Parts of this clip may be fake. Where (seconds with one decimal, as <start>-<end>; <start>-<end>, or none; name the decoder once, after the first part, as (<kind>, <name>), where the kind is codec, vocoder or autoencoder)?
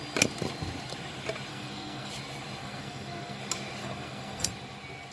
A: 1.5-2.1 (codec, SNAC); 2.6-3.4; 3.8-4.5